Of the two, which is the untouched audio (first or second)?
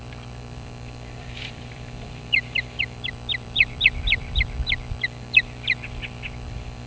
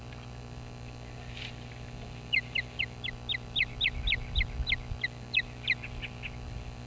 second